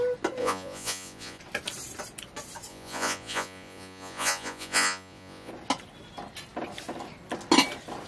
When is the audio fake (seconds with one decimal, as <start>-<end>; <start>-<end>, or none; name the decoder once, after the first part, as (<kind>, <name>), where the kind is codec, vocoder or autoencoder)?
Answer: 0.4-1.4 (vocoder, Vocos); 2.7-5.5